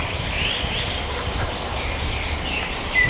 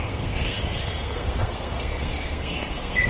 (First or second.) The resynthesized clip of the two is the second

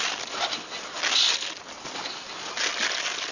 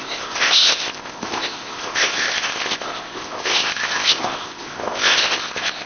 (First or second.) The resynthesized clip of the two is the second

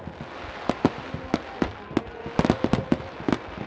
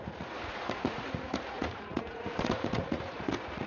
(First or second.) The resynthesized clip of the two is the second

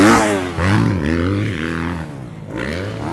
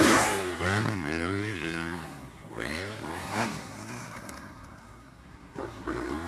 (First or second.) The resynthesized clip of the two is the second